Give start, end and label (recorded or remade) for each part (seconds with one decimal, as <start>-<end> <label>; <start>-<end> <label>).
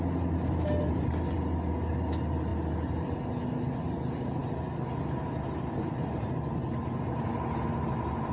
0.0-8.3 recorded